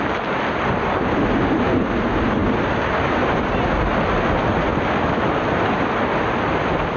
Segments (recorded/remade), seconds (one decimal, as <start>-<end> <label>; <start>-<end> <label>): 0.0-7.0 recorded